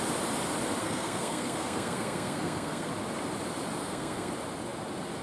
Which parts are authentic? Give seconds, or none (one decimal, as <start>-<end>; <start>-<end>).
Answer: 0.0-0.8; 2.9-3.8; 4.3-5.2